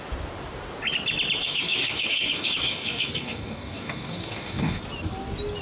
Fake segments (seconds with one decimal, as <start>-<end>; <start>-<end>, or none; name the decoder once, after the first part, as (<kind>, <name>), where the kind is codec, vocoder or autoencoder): 1.4-4.8 (codec, DAC)